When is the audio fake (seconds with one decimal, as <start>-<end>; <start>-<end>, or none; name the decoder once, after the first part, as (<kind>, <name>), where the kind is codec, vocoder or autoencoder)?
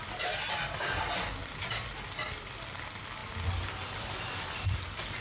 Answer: none